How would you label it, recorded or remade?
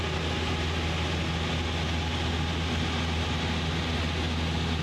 recorded